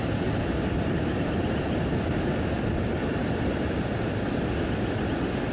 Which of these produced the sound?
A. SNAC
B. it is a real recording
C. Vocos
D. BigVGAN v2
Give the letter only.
D